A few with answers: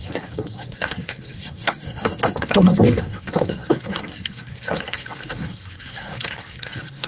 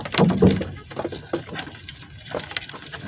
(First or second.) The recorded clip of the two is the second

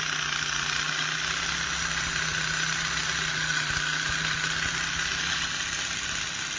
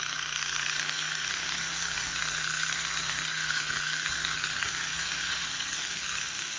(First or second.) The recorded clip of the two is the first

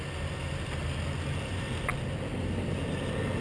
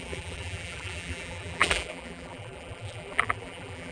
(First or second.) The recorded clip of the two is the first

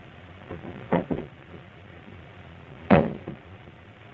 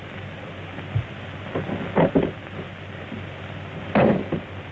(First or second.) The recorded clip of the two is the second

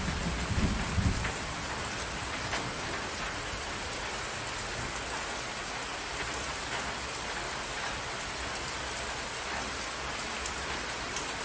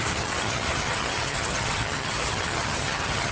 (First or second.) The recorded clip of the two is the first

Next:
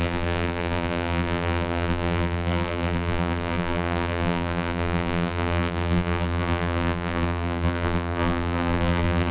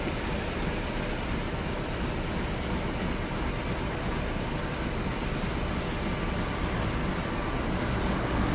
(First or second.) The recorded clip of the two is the second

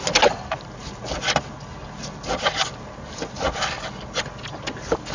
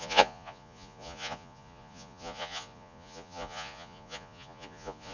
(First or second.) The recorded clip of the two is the first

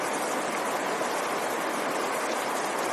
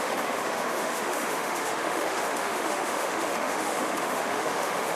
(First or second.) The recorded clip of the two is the first